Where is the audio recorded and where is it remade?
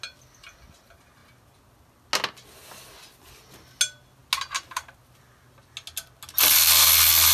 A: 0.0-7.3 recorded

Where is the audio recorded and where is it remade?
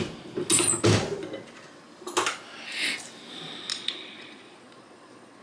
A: 0.0-3.7 recorded; 3.7-5.4 remade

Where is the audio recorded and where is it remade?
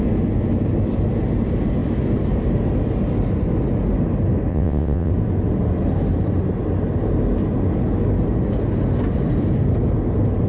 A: 0.0-4.5 recorded; 4.5-5.1 remade; 5.1-10.5 recorded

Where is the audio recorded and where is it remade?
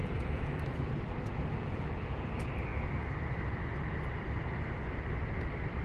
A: 0.0-0.5 remade; 0.5-1.5 recorded; 1.5-2.2 remade; 2.2-5.8 recorded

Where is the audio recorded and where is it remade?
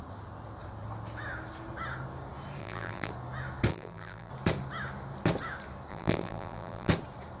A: 0.0-2.6 recorded; 2.6-3.1 remade; 3.1-3.7 recorded; 3.7-4.3 remade; 4.3-5.9 recorded; 5.9-6.9 remade; 6.9-7.4 recorded